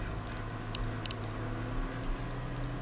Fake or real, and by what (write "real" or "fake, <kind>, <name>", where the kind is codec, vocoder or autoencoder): real